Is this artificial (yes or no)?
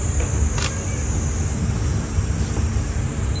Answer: no